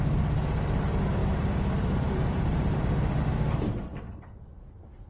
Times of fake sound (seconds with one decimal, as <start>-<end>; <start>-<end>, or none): 1.2-3.2